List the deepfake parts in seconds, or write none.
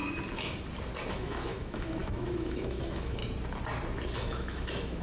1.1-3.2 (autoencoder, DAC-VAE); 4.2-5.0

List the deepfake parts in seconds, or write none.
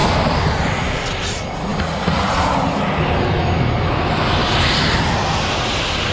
4.4-5.2 (vocoder, BigVGAN v2)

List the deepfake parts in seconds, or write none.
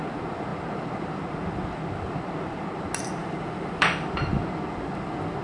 3.2-3.9 (vocoder, BigVGAN v2)